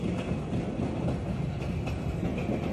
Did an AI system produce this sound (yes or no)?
no